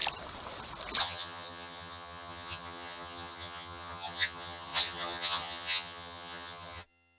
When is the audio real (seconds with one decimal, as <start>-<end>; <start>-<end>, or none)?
0.0-1.0